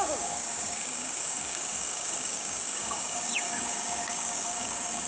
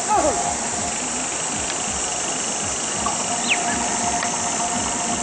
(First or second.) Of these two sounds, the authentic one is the second